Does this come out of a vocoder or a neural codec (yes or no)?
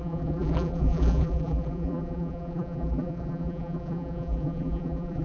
yes